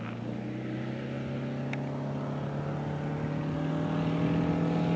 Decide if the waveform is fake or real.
real